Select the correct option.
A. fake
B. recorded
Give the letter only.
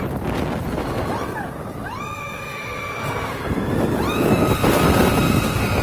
A